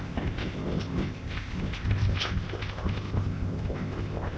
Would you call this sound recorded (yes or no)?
no